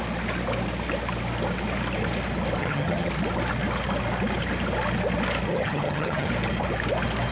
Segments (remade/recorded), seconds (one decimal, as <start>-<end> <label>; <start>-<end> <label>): 0.0-2.6 recorded; 2.6-3.1 remade; 3.1-5.5 recorded; 5.5-6.3 remade; 6.3-7.3 recorded

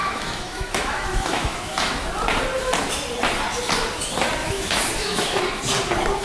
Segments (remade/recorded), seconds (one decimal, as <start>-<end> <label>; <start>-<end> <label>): 0.0-2.1 remade; 2.1-4.4 recorded; 4.4-5.4 remade; 5.4-6.2 recorded

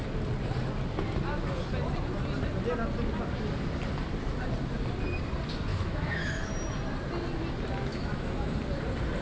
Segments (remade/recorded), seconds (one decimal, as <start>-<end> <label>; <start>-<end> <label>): 0.0-5.7 recorded; 5.7-6.5 remade; 6.5-7.9 recorded; 7.9-8.6 remade; 8.6-9.2 recorded

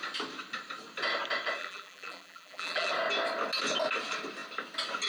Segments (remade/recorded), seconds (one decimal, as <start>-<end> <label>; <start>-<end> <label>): 0.0-1.6 recorded; 1.6-2.9 remade; 2.9-5.1 recorded